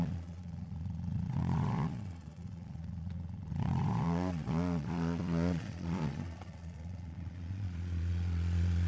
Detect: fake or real fake